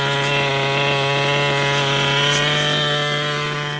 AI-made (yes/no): no